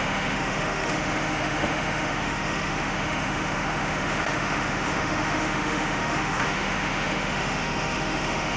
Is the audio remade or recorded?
remade